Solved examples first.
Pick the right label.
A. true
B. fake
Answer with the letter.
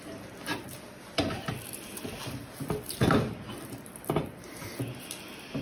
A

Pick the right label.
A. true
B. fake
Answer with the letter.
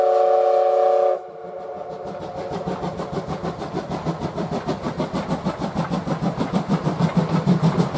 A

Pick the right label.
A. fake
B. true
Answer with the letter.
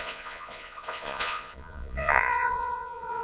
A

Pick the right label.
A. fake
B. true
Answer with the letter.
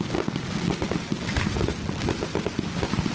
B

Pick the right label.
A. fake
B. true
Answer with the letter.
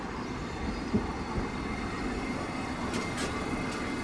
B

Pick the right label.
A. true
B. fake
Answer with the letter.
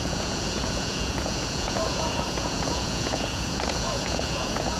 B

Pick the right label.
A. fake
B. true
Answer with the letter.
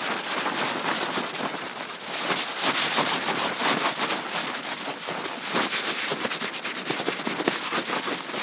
B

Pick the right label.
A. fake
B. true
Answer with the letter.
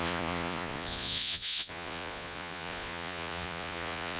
A